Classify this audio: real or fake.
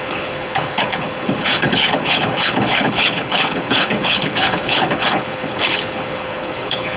fake